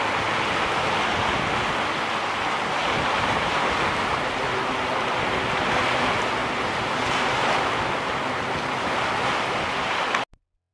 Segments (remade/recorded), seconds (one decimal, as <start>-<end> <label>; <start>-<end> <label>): 0.0-10.7 recorded